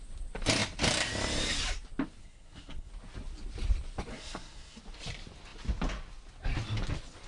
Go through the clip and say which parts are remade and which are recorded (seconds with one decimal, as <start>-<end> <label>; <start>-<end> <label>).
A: 0.0-2.2 recorded; 2.2-2.9 remade; 2.9-4.1 recorded; 4.1-4.8 remade; 4.8-7.3 recorded